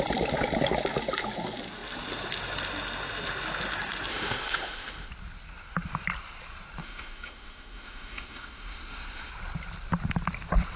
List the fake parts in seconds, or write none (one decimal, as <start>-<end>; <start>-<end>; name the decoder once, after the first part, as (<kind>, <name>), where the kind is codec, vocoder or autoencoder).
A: 4.1-5.1 (autoencoder, DAC-VAE); 6.8-9.3